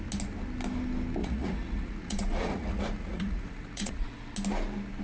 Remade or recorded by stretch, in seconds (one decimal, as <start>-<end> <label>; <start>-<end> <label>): 0.0-1.2 recorded; 1.2-4.2 remade; 4.2-5.0 recorded